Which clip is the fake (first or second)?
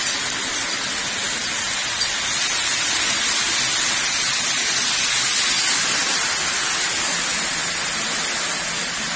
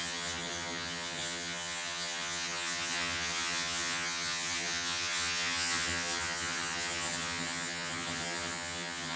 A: second